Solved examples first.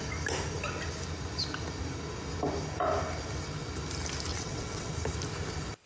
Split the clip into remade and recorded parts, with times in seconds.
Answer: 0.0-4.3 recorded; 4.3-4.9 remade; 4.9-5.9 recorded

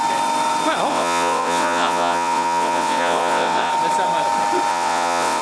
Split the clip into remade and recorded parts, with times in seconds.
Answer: 0.0-0.9 recorded; 0.9-3.7 remade; 3.7-4.7 recorded; 4.7-5.4 remade

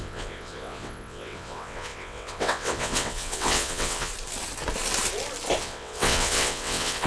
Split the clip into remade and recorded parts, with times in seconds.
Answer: 0.0-4.1 remade; 4.1-5.6 recorded; 5.6-7.1 remade

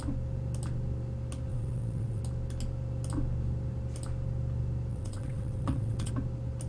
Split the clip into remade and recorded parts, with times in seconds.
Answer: 0.0-1.5 recorded; 1.5-2.2 remade; 2.2-4.9 recorded; 4.9-6.1 remade; 6.1-6.7 recorded

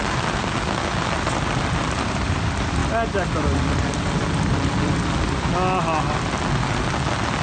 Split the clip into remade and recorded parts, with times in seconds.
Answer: 0.0-7.4 recorded

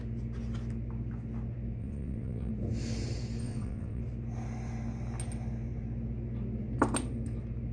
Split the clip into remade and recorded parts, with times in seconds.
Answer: 0.0-1.8 recorded; 1.8-2.5 remade; 2.5-3.4 recorded; 3.4-4.0 remade; 4.0-7.7 recorded

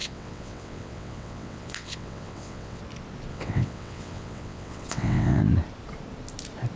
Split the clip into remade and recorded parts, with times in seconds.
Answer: 0.0-2.8 remade; 2.8-3.3 recorded; 3.3-5.4 remade; 5.4-6.8 recorded